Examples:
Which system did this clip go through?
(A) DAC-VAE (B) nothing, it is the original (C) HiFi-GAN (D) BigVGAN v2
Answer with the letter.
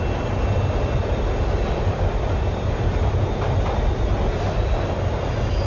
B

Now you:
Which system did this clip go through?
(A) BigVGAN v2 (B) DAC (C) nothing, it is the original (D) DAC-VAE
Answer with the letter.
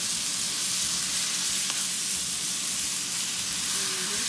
C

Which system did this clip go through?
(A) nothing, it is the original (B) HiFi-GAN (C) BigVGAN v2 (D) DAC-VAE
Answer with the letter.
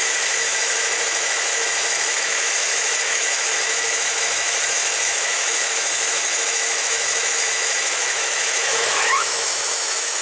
D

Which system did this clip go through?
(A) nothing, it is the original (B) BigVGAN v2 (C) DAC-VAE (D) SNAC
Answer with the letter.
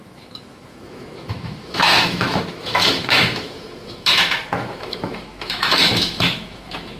C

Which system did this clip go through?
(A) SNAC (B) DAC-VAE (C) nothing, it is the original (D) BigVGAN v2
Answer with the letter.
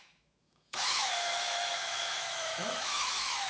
B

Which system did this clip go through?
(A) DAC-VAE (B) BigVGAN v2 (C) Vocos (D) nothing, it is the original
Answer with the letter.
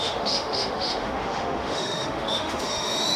A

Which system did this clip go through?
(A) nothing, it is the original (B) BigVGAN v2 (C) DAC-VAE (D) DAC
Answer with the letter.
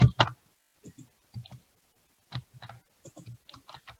A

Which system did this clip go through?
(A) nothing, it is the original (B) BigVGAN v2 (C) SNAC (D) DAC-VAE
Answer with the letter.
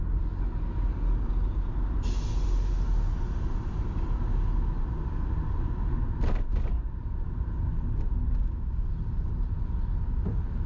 A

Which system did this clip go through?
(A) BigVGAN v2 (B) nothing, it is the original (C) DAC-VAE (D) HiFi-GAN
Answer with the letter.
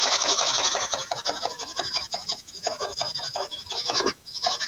C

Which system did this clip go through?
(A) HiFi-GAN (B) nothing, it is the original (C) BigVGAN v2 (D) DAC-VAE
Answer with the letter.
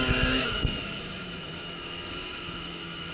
D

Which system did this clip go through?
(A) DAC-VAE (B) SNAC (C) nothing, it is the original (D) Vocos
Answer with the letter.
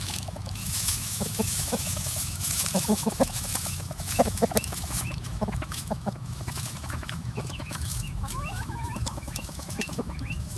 A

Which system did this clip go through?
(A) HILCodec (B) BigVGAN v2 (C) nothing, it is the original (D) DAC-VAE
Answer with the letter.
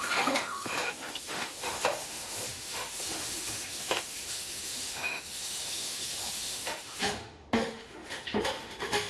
D